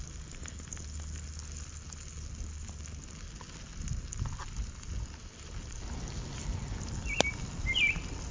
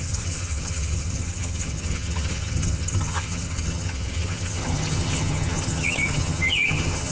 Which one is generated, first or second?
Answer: second